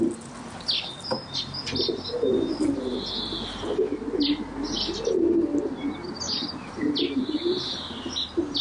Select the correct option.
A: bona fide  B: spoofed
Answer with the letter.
A